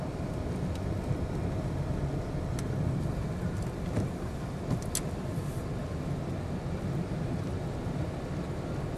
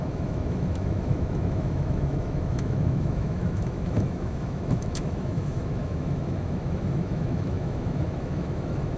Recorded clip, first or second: first